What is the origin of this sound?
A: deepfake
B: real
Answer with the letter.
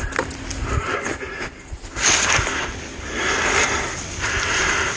A